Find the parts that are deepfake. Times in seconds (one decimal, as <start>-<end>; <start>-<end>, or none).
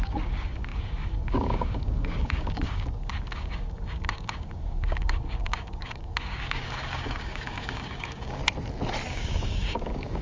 0.0-8.4; 9.1-10.2